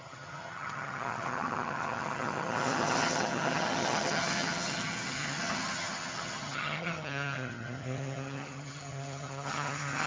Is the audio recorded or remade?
remade